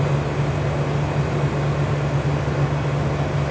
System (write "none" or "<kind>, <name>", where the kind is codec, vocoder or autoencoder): none